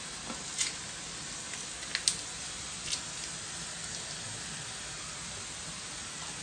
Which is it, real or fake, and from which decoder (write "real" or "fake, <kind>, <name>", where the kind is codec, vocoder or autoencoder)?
real